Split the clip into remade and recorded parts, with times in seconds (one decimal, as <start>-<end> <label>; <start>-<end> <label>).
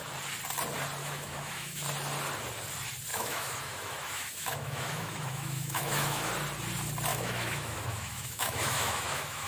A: 0.0-1.0 recorded; 1.0-1.8 remade; 1.8-3.1 recorded; 3.1-6.3 remade; 6.3-7.1 recorded; 7.1-9.5 remade